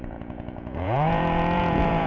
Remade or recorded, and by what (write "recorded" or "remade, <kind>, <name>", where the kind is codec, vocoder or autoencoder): remade, vocoder, Vocos